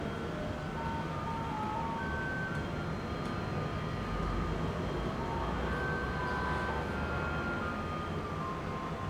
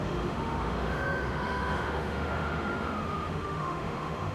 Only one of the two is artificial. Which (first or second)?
second